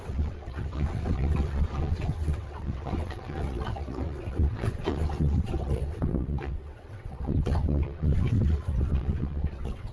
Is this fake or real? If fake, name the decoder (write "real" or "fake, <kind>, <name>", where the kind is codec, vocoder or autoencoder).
fake, vocoder, WaveNeXt